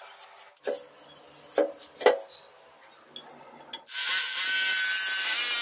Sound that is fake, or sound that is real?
real